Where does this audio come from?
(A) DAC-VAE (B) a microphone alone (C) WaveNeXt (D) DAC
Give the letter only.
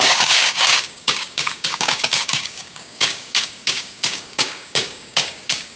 D